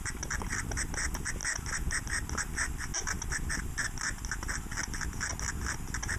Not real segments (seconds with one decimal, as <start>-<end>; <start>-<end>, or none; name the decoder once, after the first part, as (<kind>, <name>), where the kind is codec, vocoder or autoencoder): none